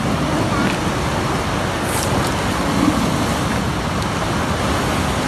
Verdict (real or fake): real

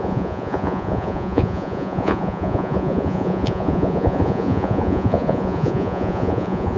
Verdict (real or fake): fake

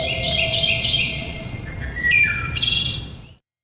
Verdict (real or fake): fake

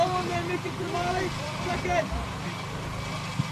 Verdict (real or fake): fake